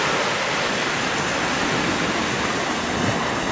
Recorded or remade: recorded